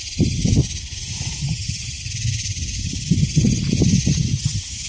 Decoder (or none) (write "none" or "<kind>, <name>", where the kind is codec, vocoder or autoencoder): none